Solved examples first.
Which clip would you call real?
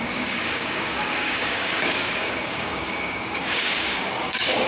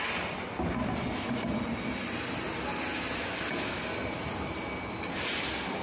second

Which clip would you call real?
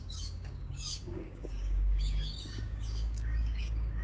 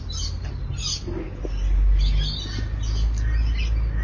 second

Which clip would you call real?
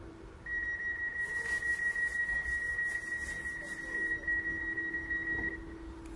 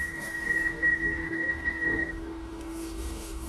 first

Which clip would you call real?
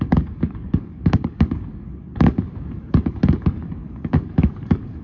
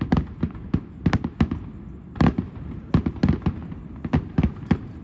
second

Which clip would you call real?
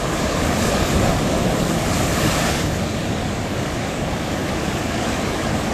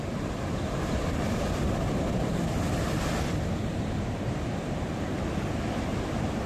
second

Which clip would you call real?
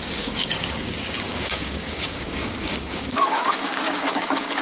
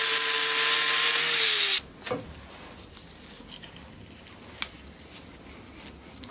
second